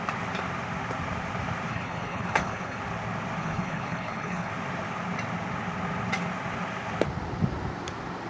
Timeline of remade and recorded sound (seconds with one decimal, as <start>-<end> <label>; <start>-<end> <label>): 0.0-1.7 recorded; 1.7-2.8 remade; 2.8-3.4 recorded; 3.4-4.5 remade; 4.5-8.3 recorded